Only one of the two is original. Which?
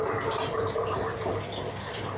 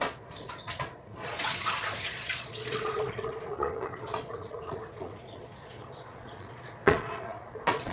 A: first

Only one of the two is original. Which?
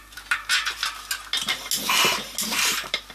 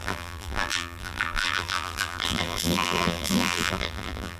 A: first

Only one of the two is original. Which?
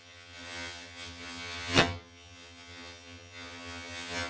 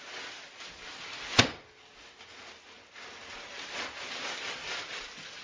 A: second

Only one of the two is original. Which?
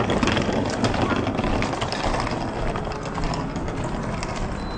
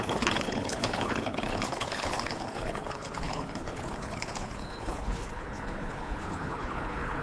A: first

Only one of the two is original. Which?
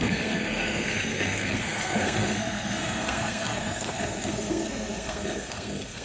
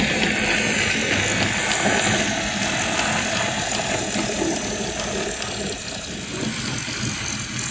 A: second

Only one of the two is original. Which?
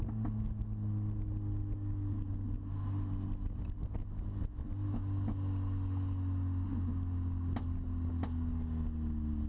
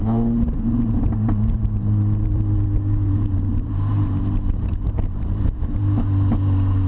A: first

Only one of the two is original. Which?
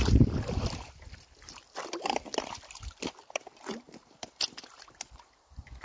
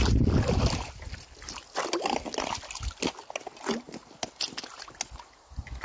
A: second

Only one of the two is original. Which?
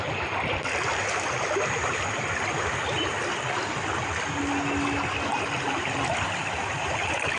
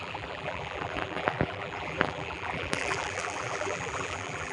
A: first